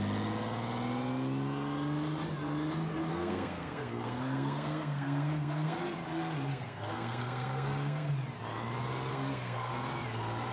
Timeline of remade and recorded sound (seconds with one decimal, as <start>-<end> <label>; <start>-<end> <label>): 0.0-3.1 recorded; 3.1-5.8 remade; 5.8-6.5 recorded; 6.5-8.1 remade; 8.1-9.1 recorded; 9.1-9.7 remade; 9.7-10.5 recorded